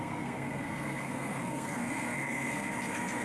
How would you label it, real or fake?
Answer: fake